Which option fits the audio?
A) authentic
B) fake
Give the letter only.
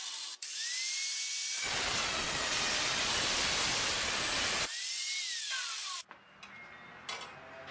A